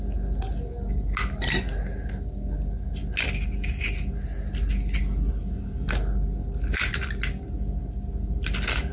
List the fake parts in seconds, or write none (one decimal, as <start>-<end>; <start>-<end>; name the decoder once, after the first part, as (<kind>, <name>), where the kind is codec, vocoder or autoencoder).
none